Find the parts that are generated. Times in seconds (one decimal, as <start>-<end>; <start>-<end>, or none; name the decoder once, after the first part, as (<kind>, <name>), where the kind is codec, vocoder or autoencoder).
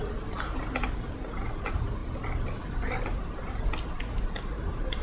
none